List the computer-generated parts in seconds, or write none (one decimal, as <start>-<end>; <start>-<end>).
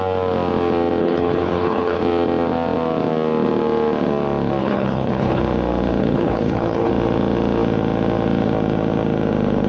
1.0-2.0; 4.6-5.4; 6.0-6.9